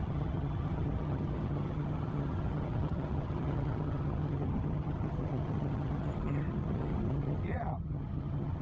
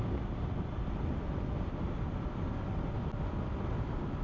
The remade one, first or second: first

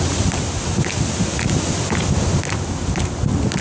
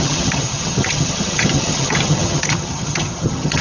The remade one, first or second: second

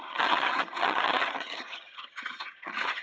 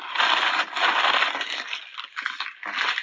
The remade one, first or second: first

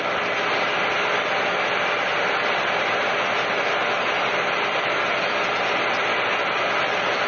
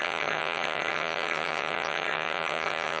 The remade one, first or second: second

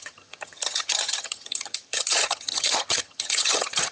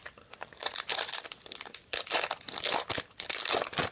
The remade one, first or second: first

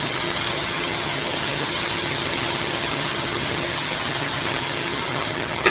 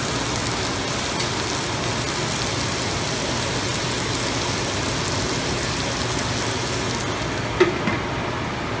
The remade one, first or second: first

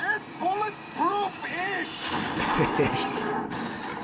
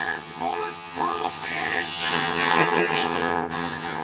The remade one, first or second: second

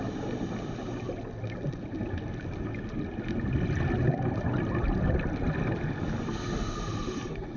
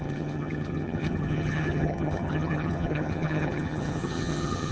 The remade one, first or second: second